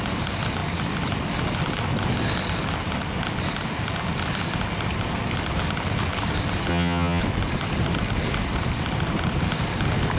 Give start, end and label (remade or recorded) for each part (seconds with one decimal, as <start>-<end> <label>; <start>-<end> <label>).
0.0-6.7 recorded; 6.7-7.2 remade; 7.2-10.2 recorded